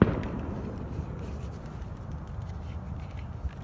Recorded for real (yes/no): yes